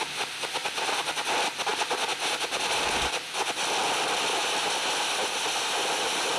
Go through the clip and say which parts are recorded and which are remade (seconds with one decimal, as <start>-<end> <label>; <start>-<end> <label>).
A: 0.0-6.4 recorded